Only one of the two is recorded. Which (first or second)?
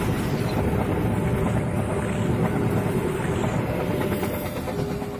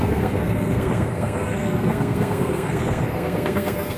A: first